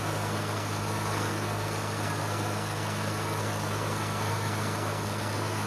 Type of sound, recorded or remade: remade